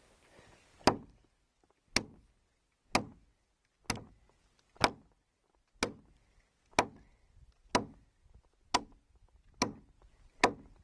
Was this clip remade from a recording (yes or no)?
no